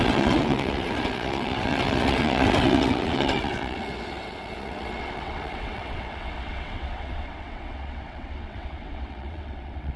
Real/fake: fake